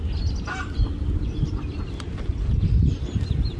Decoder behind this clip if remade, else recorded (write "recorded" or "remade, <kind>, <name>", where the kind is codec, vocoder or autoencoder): recorded